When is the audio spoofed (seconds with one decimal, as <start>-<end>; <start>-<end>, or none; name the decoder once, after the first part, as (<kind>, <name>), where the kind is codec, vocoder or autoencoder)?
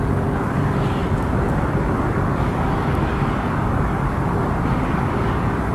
0.0-5.7 (codec, DAC)